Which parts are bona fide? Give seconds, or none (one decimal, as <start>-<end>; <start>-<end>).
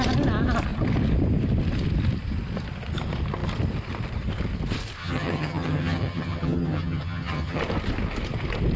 0.0-5.0; 7.6-8.8